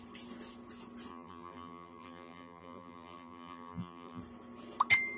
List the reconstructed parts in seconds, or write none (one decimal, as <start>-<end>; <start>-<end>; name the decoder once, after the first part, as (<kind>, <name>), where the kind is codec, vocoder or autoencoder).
1.1-4.2 (vocoder, BigVGAN v2)